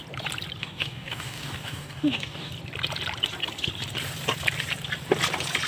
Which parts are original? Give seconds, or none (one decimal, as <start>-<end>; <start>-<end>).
0.0-0.6; 2.5-5.7